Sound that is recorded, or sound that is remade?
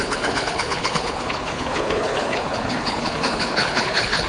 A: remade